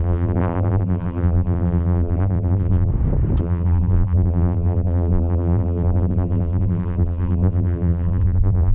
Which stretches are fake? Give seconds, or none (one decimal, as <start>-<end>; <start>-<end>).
0.0-2.9; 3.4-8.7